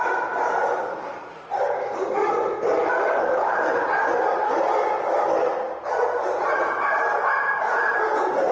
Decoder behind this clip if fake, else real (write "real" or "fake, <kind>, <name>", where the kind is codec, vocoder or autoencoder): real